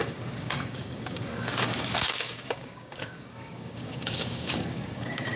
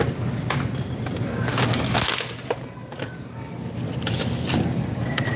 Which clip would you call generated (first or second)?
first